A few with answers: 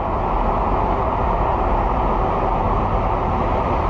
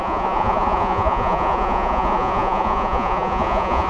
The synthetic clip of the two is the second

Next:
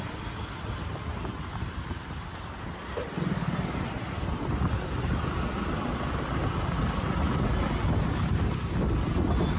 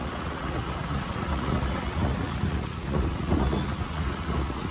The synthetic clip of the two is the second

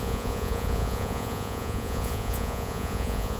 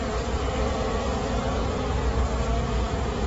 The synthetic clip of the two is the first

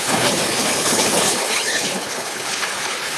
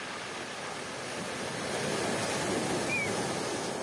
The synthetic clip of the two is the first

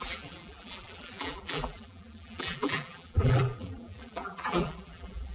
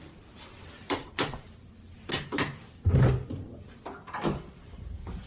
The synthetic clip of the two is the first